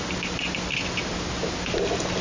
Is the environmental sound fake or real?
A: real